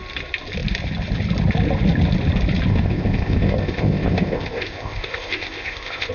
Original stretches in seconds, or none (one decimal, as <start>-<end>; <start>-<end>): 0.0-2.7